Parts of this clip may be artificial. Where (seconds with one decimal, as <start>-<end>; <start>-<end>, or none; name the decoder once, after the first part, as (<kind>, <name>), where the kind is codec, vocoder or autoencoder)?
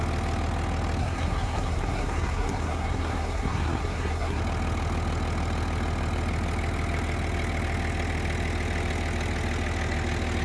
1.0-4.4 (codec, SNAC)